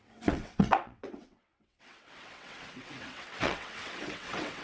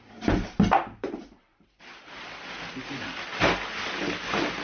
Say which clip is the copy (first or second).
first